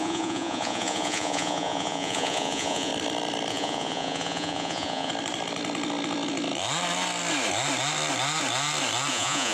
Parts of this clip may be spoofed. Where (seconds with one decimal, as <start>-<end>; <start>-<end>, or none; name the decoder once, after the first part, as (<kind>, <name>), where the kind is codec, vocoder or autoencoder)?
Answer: 0.0-2.9 (vocoder, Vocos); 3.5-5.1; 9.1-9.5